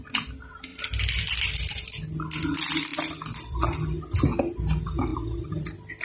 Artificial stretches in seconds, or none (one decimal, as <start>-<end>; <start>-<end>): 0.7-2.0; 2.9-3.6; 5.1-6.0